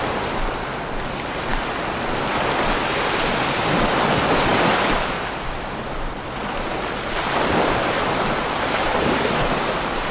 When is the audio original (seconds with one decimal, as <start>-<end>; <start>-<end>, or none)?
0.0-10.1